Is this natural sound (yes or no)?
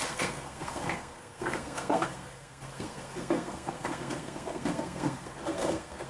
no